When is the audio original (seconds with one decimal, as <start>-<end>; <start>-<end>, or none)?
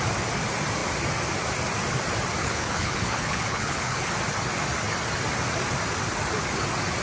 0.0-2.4; 4.1-7.0